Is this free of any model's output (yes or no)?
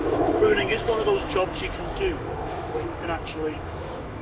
no